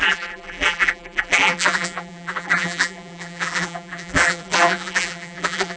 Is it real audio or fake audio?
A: fake